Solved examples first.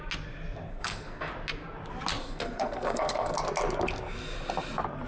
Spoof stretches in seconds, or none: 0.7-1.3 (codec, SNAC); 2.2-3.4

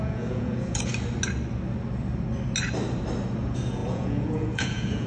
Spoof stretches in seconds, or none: 0.0-0.9 (vocoder, Vocos); 3.4-5.1